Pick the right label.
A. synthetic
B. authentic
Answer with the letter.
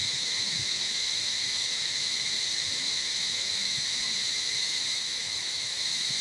A